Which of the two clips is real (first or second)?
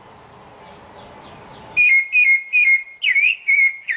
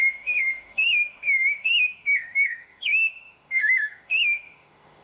first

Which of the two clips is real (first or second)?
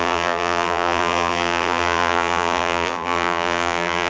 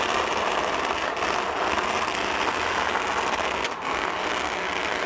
second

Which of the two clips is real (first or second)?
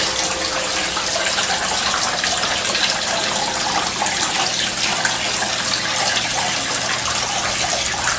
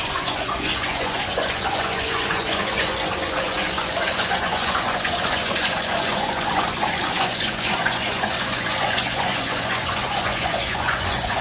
first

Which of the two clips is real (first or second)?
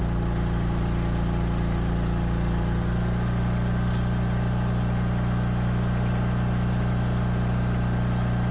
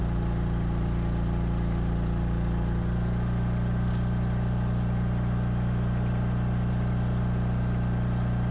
first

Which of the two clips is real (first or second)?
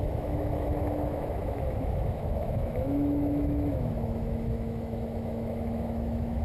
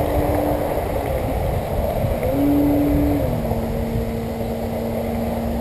second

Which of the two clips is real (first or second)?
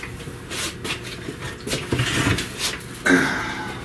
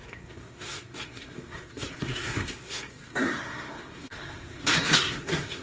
first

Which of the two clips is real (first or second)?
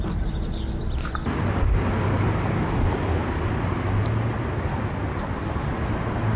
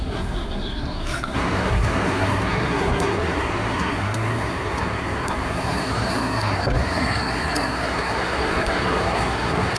first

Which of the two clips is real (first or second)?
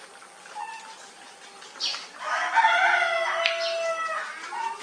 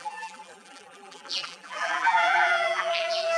first